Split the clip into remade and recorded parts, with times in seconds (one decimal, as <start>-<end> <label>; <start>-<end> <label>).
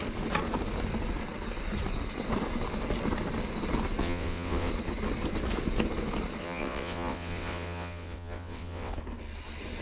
0.0-4.0 recorded; 4.0-4.7 remade; 4.7-6.4 recorded; 6.4-8.9 remade; 8.9-9.8 recorded